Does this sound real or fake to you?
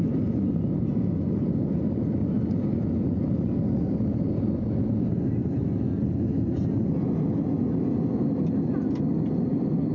real